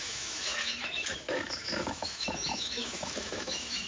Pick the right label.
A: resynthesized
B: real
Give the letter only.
A